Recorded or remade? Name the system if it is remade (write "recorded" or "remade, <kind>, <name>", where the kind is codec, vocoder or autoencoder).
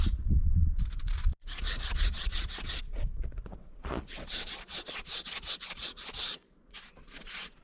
remade, vocoder, Vocos